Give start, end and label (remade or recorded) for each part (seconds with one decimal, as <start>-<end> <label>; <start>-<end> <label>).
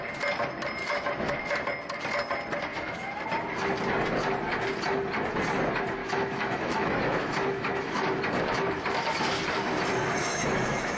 0.0-0.8 recorded; 0.8-1.5 remade; 1.5-2.7 recorded; 2.7-3.2 remade; 3.2-6.0 recorded; 6.0-8.2 remade; 8.2-10.2 recorded; 10.2-11.0 remade